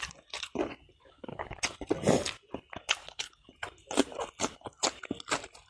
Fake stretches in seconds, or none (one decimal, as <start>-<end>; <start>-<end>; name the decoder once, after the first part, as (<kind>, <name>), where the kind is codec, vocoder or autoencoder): 1.0-1.6 (codec, HILCodec); 3.0-3.5